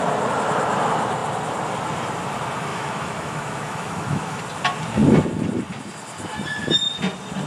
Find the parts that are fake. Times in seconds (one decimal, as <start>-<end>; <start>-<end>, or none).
2.7-4.4